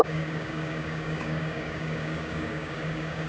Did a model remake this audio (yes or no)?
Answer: yes